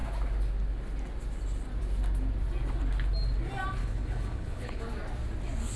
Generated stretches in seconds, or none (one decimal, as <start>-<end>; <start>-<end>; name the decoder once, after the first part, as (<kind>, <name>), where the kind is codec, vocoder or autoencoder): 3.8-4.8 (codec, HILCodec)